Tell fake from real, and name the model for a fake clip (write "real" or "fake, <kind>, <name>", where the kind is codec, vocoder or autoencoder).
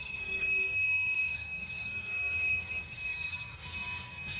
fake, codec, SNAC